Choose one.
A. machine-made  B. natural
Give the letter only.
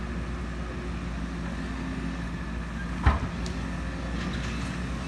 B